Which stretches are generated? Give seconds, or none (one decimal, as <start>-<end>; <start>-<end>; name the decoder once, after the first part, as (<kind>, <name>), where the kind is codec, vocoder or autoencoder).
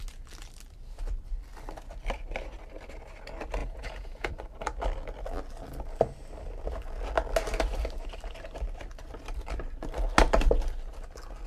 3.6-4.3 (vocoder, Vocos)